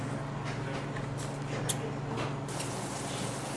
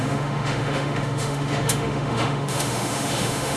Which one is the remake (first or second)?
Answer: second